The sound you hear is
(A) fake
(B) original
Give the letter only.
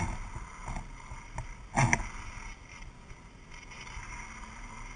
B